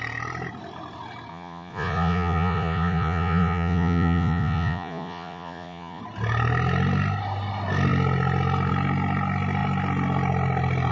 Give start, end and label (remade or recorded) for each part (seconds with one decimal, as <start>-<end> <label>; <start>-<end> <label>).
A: 0.0-1.3 recorded; 1.3-6.0 remade; 6.0-10.9 recorded